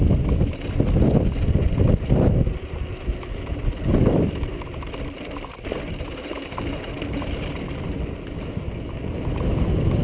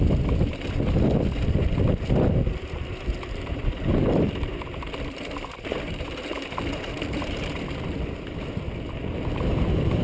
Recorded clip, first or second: first